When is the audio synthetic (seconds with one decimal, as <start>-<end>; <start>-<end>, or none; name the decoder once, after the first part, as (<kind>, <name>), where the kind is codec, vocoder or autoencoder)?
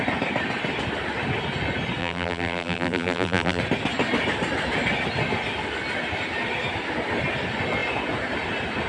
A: 2.0-3.6 (vocoder, BigVGAN v2)